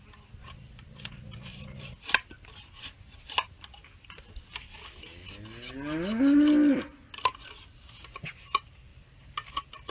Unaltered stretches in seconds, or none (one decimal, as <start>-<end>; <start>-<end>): 0.0-9.9